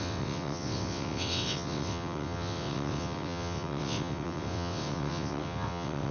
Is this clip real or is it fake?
fake